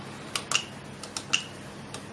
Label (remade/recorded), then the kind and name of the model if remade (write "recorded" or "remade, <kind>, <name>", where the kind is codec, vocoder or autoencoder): recorded